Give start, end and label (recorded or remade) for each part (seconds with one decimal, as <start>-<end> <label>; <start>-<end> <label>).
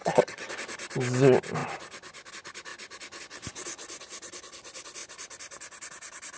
0.0-0.5 remade; 0.5-6.4 recorded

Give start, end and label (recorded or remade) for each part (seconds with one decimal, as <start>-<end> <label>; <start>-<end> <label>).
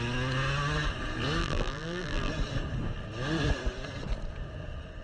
0.0-1.4 recorded; 1.4-2.3 remade; 2.3-5.0 recorded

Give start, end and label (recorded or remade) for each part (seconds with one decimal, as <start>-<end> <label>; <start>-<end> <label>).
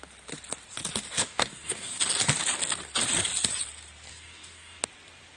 0.0-1.2 recorded; 1.2-2.0 remade; 2.0-4.1 recorded; 4.1-4.8 remade; 4.8-5.4 recorded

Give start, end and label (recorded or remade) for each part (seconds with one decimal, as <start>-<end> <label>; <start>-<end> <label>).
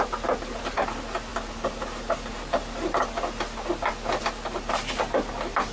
0.0-5.7 recorded